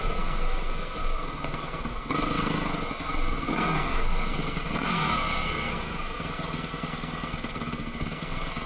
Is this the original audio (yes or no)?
no